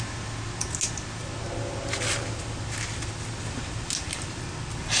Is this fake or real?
real